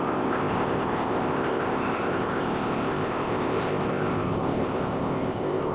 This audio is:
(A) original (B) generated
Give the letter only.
B